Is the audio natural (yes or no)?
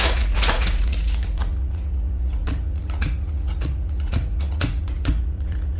no